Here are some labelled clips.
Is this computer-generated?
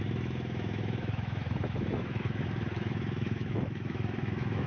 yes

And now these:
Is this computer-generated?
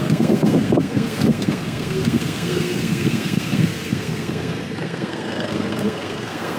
yes